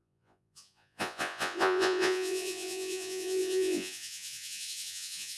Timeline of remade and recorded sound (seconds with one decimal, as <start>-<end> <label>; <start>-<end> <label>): 0.0-5.4 remade